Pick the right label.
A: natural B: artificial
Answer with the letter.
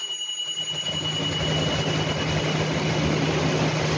A